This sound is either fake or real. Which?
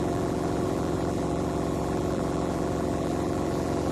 fake